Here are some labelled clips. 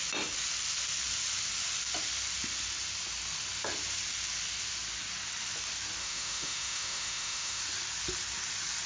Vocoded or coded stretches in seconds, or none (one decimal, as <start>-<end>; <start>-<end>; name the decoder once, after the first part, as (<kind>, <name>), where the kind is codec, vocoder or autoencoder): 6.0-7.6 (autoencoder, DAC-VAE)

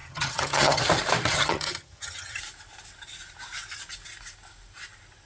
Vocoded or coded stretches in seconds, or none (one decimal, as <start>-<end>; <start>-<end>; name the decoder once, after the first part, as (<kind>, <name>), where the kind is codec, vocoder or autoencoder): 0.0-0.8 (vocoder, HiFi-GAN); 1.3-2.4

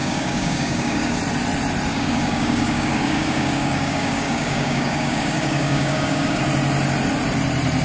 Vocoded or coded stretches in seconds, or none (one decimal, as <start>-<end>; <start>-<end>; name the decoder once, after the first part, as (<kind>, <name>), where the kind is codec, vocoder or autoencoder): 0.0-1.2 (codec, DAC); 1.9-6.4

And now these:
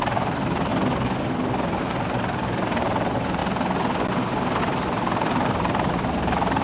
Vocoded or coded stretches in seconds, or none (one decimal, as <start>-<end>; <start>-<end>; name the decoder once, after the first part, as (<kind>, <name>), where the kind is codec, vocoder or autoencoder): 0.0-0.7 (vocoder, BigVGAN v2); 1.8-3.4; 4.6-6.6